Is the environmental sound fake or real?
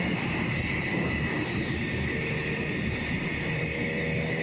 real